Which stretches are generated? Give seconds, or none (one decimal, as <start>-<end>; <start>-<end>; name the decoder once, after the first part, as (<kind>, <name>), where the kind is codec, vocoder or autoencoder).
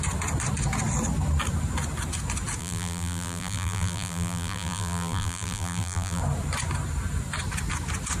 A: 2.6-6.2 (vocoder, BigVGAN v2)